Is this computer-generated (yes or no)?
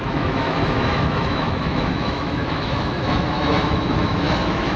yes